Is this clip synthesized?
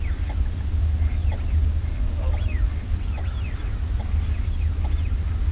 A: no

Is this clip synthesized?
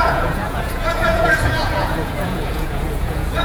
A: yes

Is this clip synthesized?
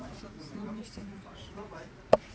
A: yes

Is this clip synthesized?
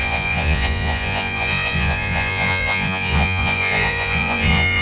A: yes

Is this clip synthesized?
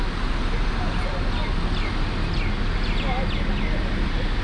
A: no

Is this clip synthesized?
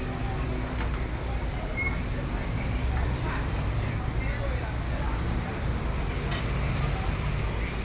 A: no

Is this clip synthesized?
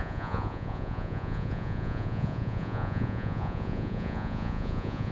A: yes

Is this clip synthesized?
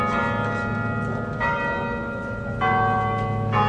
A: no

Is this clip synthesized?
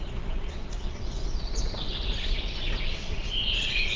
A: yes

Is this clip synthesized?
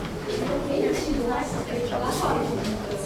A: no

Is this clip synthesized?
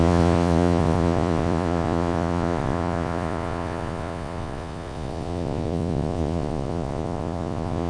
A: yes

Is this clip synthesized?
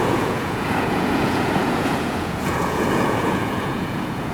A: yes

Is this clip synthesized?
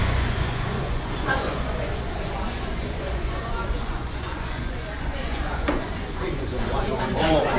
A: yes